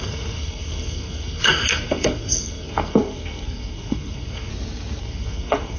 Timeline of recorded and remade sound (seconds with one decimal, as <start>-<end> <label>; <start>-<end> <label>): 0.0-4.5 remade; 4.5-5.0 recorded; 5.0-5.8 remade